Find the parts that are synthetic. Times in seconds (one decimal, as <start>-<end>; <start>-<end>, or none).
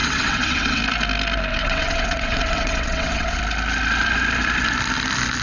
0.0-0.8; 1.5-3.4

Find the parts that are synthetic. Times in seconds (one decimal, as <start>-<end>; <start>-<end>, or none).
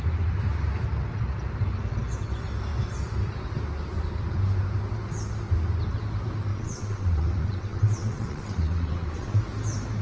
6.5-9.4